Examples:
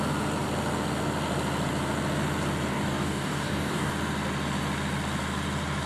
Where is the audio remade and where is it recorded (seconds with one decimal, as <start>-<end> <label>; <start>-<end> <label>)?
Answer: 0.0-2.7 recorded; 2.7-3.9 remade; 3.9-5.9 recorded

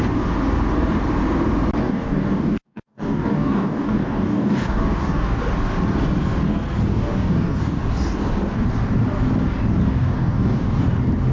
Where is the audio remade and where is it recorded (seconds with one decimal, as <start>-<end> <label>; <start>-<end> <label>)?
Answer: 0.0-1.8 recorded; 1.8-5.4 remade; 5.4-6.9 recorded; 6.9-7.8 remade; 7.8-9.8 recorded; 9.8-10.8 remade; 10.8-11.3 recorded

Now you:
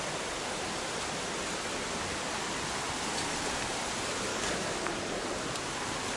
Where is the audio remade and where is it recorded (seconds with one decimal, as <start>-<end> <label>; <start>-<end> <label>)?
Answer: 0.0-4.3 recorded; 4.3-4.9 remade; 4.9-6.2 recorded

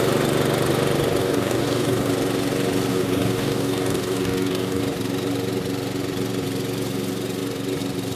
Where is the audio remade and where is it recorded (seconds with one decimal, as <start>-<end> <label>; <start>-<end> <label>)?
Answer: 0.0-1.2 recorded; 1.2-2.1 remade; 2.1-2.9 recorded; 2.9-4.8 remade; 4.8-8.2 recorded